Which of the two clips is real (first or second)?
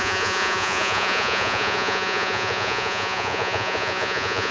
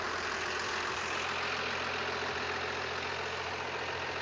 second